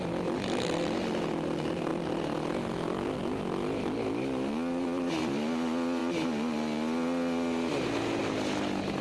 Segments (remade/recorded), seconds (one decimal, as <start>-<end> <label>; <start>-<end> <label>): 0.0-9.0 recorded